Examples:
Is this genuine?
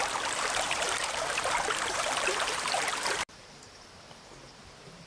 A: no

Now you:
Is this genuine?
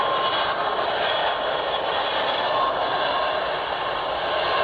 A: no